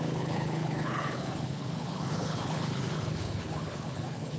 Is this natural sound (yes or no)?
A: no